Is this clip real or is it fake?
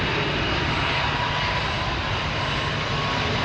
real